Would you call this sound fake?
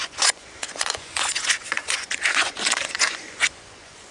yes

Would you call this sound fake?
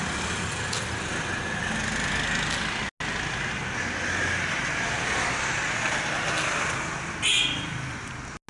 no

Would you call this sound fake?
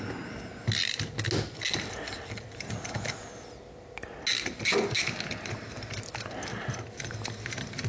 no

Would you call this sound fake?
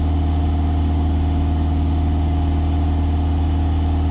no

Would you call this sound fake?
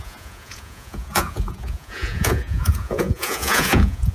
yes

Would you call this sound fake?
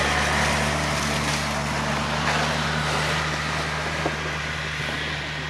no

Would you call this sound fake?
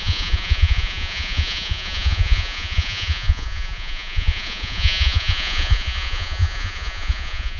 yes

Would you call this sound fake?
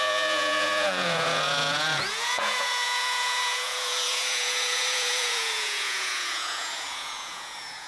yes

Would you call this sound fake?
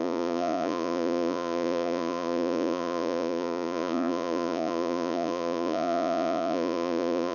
yes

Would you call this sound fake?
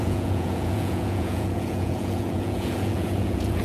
yes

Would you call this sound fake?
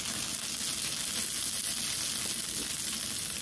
no